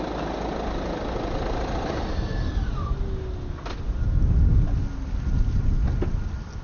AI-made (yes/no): no